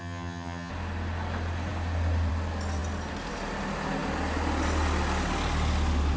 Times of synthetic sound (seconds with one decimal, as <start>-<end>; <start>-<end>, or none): 0.0-0.7